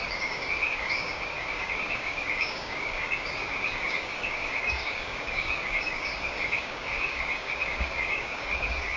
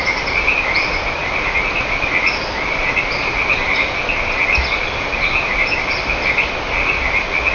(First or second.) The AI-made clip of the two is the first